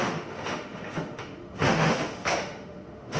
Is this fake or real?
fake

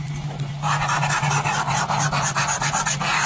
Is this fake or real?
real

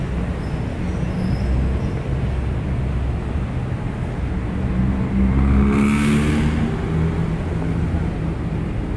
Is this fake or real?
real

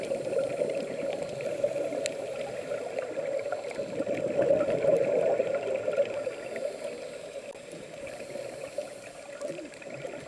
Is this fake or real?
real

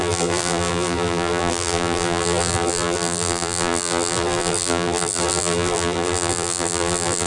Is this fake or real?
fake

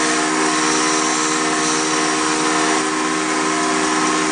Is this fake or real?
real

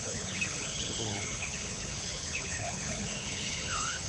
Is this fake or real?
fake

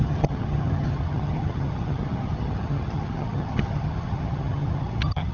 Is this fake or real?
fake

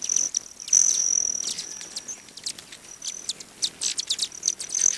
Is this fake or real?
real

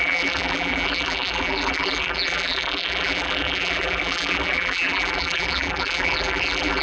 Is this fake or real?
fake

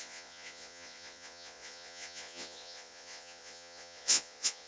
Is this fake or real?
fake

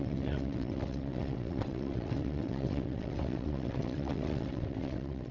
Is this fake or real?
fake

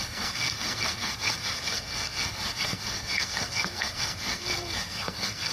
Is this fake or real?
fake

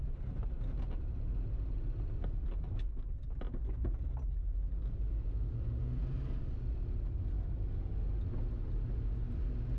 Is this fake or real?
real